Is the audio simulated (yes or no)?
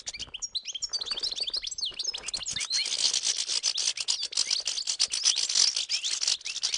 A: no